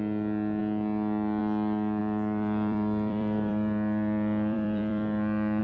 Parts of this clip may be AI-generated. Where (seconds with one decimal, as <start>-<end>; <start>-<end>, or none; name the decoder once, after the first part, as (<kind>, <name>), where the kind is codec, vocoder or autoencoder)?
2.0-5.6 (vocoder, BigVGAN v2)